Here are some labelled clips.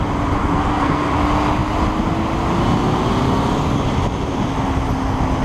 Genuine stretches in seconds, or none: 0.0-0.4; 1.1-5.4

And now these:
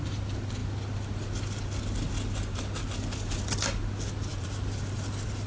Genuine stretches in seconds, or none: 0.0-4.3

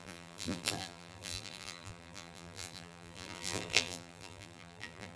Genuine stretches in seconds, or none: none

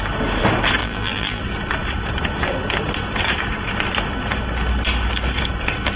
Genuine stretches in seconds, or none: 0.0-0.8; 1.4-6.0

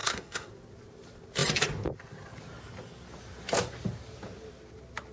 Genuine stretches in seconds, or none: 0.5-5.1

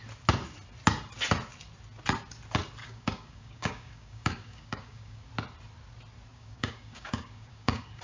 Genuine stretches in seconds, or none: 0.0-2.8; 5.3-6.3

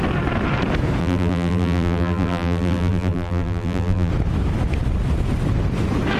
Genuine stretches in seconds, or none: 0.0-1.0; 4.1-6.2

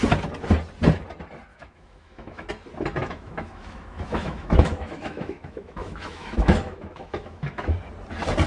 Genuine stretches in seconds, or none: 0.0-1.5; 2.5-3.0; 7.7-8.5